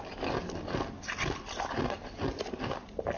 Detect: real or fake real